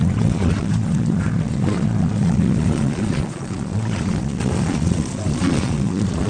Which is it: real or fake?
fake